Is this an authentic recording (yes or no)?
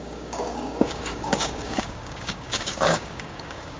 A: no